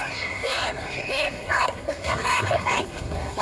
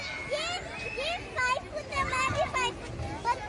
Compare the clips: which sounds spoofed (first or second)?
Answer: first